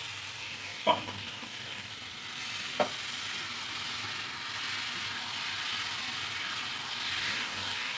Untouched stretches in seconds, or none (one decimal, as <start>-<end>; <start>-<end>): 0.0-0.4; 1.9-7.2